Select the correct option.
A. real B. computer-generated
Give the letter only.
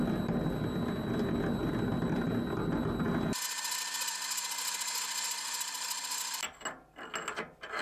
A